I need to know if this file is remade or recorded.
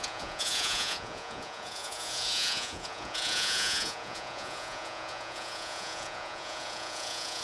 remade